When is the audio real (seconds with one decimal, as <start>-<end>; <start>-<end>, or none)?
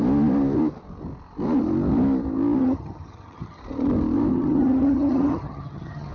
0.0-2.6; 3.6-4.3